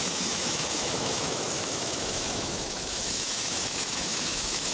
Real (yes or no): no